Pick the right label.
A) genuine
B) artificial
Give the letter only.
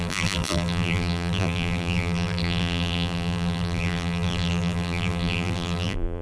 B